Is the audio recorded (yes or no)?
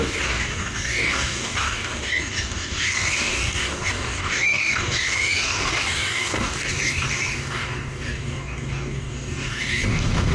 no